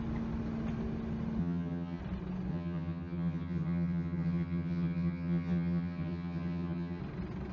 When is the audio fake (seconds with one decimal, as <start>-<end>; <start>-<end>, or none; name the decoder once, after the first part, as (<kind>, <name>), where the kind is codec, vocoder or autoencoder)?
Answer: 1.4-2.0 (vocoder, HiFi-GAN); 2.5-7.0